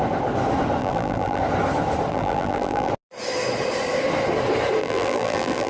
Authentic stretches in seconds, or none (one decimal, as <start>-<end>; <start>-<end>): 0.0-0.8; 1.4-2.1; 2.9-4.8